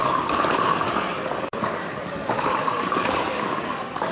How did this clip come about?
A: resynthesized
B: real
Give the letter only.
A